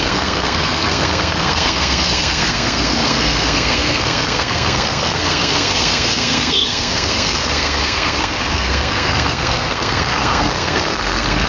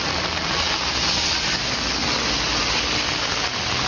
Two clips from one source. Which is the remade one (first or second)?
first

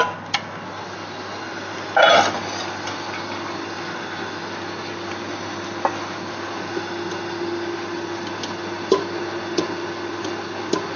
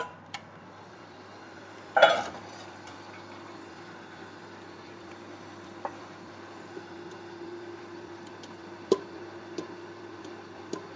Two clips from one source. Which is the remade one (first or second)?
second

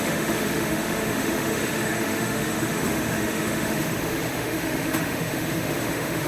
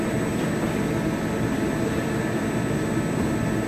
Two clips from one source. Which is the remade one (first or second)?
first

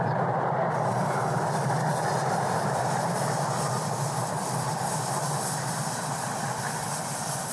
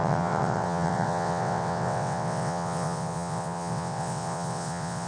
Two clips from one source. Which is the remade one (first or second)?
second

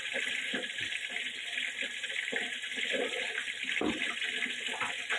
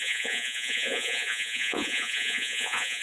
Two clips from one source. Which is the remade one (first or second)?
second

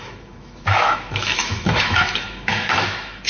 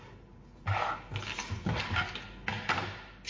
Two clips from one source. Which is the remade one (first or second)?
first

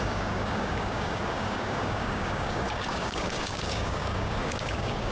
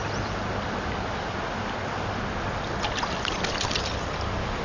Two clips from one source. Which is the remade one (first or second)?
first